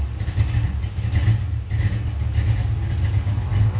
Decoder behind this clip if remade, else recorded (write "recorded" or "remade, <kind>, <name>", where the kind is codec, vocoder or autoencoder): recorded